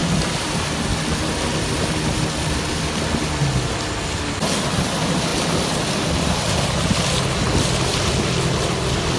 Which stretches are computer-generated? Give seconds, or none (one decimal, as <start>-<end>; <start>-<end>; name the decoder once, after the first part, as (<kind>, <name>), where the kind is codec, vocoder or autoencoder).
0.0-1.0 (vocoder, BigVGAN v2); 2.7-4.2